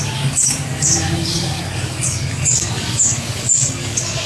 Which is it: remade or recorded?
remade